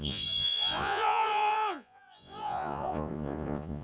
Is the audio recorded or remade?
remade